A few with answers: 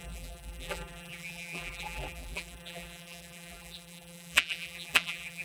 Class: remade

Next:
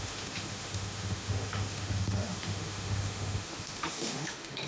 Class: remade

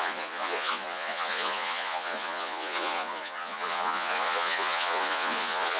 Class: remade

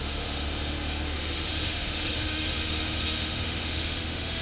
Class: remade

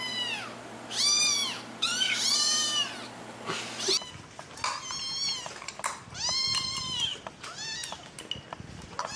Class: recorded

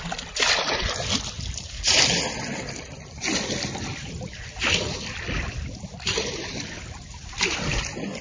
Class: recorded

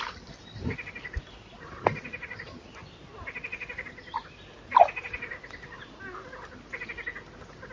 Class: recorded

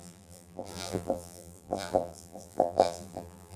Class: remade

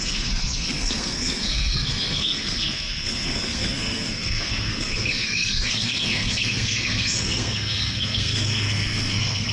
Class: remade